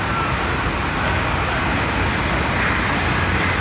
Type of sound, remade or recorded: recorded